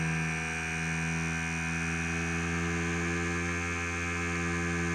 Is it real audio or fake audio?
real